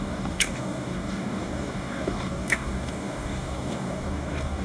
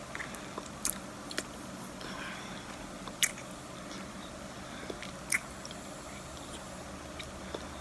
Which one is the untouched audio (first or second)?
second